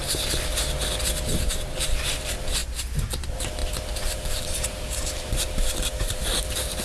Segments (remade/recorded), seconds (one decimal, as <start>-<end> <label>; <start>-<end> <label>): 0.0-0.5 remade; 0.5-1.3 recorded; 1.3-2.6 remade; 2.6-3.2 recorded; 3.2-6.8 remade